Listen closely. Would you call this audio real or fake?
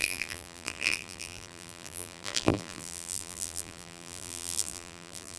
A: fake